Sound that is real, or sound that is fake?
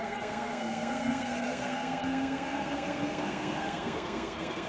fake